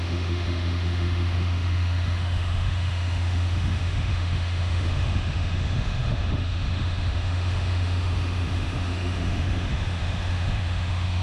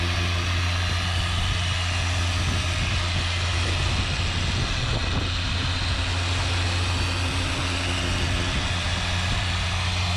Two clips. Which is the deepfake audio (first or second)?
first